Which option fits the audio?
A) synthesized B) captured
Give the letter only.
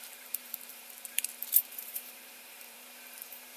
A